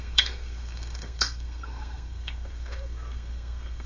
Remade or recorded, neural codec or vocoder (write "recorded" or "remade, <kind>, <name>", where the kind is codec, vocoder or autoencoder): remade, codec, SNAC